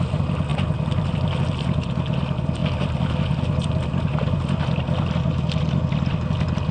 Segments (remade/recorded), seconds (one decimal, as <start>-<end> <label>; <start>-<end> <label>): 0.0-6.7 recorded